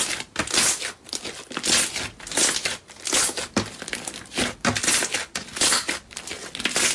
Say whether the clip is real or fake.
real